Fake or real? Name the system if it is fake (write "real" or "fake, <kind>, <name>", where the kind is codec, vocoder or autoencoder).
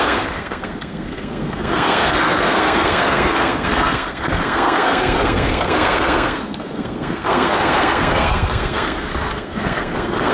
fake, codec, SNAC